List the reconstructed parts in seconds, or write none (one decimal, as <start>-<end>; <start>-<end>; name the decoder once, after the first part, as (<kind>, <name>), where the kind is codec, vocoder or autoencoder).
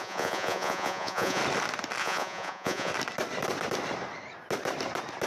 0.0-1.4 (vocoder, Vocos); 2.0-2.9